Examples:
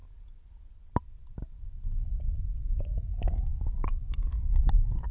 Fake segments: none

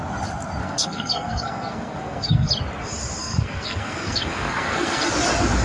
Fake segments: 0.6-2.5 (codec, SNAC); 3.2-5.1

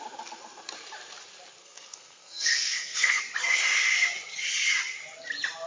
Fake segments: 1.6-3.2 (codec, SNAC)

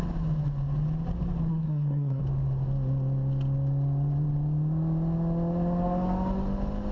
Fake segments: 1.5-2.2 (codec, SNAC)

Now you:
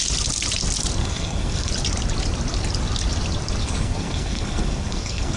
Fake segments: 1.0-1.7 (codec, SNAC); 3.6-5.4

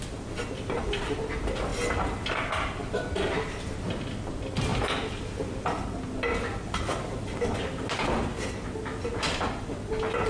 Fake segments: none

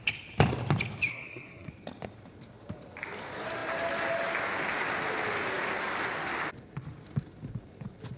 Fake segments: 1.1-1.7 (codec, SNAC)

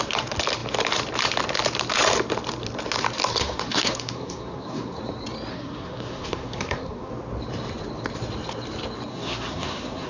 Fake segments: 3.3-5.0 (codec, SNAC); 5.5-7.1; 9.1-10.1